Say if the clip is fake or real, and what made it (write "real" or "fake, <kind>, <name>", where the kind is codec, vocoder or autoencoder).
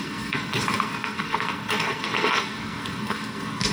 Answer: fake, codec, SNAC